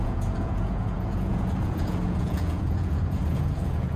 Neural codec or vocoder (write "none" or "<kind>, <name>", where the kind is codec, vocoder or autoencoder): vocoder, Vocos